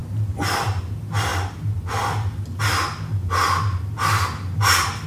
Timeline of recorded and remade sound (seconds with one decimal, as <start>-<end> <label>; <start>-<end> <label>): 0.0-0.8 remade; 0.8-5.1 recorded